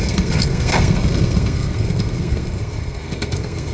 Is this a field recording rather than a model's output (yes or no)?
no